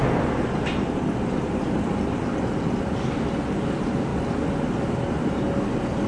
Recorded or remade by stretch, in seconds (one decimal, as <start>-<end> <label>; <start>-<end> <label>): 0.0-6.1 recorded